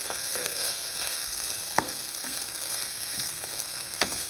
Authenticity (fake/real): fake